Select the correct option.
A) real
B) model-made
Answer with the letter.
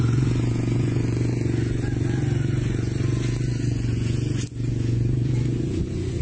B